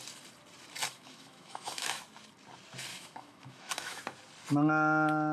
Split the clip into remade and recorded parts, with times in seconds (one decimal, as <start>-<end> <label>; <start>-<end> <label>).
0.0-0.8 recorded; 0.8-2.0 remade; 2.0-2.9 recorded; 2.9-4.0 remade; 4.0-5.3 recorded